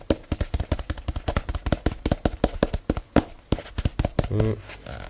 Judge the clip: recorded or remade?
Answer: recorded